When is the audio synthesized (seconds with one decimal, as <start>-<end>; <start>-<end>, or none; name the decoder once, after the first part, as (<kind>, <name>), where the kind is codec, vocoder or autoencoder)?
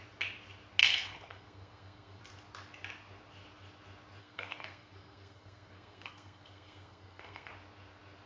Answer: 0.8-2.2 (codec, SNAC); 4.2-7.5